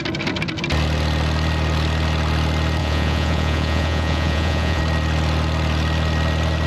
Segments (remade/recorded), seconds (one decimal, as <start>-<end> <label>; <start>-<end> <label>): 0.0-2.8 recorded; 2.8-4.8 remade; 4.8-6.7 recorded